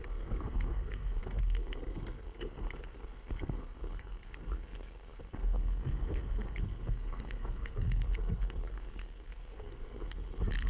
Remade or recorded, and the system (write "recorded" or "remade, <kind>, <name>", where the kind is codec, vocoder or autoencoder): remade, codec, SNAC